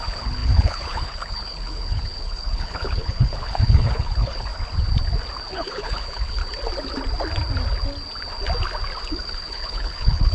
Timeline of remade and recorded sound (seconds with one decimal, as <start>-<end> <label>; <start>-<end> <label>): 0.0-4.5 remade; 4.5-5.5 recorded; 5.5-6.4 remade; 6.4-9.1 recorded; 9.1-10.3 remade